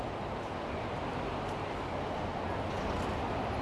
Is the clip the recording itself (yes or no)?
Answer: yes